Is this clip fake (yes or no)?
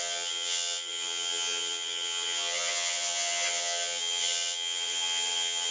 yes